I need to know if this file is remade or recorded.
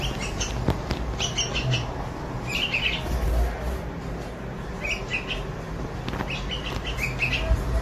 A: recorded